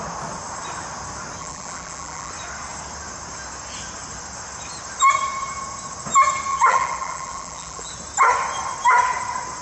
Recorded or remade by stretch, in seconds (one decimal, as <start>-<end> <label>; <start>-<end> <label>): 0.0-1.4 recorded; 1.4-2.3 remade; 2.3-6.5 recorded; 6.5-7.9 remade; 7.9-9.6 recorded